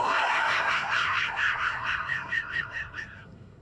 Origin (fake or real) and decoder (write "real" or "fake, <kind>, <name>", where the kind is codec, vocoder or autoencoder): fake, codec, SNAC